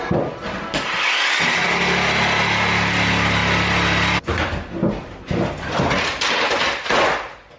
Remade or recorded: recorded